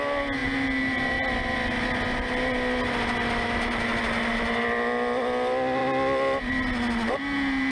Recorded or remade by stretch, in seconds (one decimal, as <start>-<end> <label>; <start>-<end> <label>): 0.0-7.7 recorded

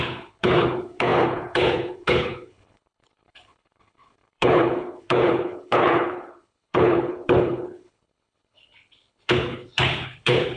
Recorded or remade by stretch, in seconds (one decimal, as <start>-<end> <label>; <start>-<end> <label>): 0.0-10.6 remade

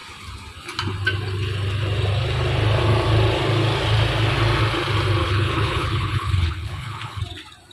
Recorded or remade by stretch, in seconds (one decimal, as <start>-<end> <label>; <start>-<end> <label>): 0.0-5.2 recorded; 5.2-7.2 remade; 7.2-7.7 recorded

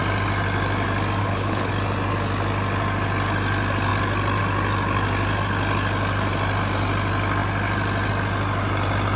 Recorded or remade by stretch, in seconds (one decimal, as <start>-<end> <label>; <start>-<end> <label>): 0.0-1.2 recorded; 1.2-1.7 remade; 1.7-9.2 recorded

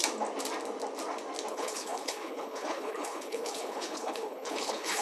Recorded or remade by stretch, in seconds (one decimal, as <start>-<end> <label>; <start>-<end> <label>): 0.0-1.5 recorded; 1.5-5.0 remade

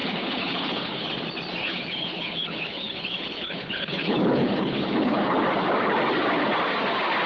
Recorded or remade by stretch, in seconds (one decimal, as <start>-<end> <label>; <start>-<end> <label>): 0.0-1.1 remade; 1.1-1.6 recorded; 1.6-5.4 remade; 5.4-7.3 recorded

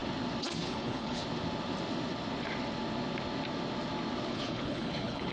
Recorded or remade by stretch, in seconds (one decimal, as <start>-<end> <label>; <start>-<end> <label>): 0.0-0.6 recorded; 0.6-1.2 remade; 1.2-4.3 recorded; 4.3-5.3 remade